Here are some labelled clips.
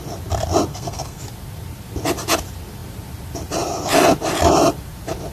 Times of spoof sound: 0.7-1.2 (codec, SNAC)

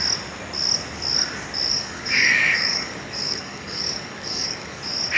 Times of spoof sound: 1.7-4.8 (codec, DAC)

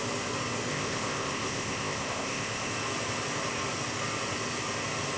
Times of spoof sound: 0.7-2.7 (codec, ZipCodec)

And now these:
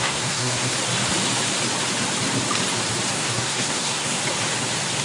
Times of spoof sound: 0.0-0.8 (codec, SNAC); 3.1-4.2

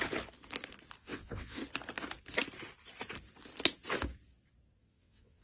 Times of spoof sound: 1.0-1.6 (vocoder, WaveNeXt); 4.8-5.4

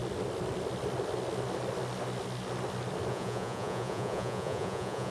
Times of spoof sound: 3.1-5.1 (vocoder, Vocos)

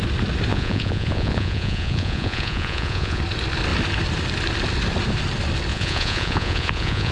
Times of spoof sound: 0.5-3.2 (vocoder, Vocos); 5.7-7.1

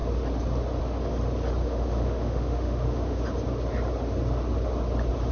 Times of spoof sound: 1.6-3.2 (autoencoder, DAC-VAE)